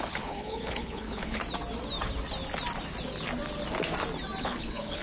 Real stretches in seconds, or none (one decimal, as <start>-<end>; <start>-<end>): 1.4-4.4